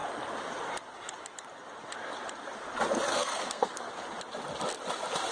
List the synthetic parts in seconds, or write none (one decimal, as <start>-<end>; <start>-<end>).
3.1-3.9